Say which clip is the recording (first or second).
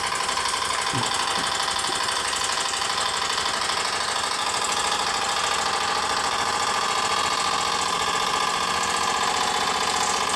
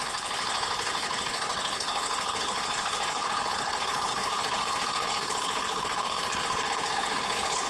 first